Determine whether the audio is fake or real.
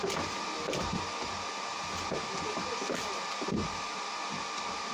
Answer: real